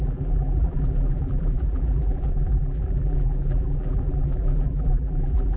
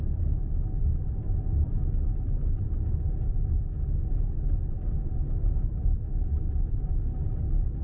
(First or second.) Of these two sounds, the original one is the second